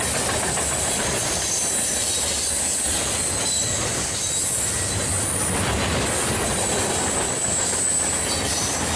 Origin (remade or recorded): recorded